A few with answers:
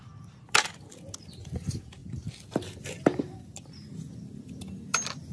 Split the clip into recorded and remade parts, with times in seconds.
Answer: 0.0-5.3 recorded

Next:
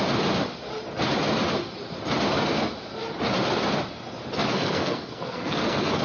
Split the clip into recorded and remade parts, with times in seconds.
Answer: 0.0-4.5 recorded; 4.5-6.0 remade